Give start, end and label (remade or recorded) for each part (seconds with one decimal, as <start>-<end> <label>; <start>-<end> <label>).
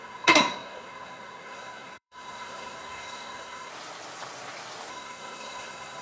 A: 0.0-3.7 remade; 3.7-4.9 recorded; 4.9-6.0 remade